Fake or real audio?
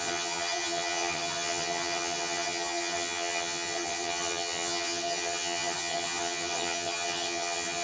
fake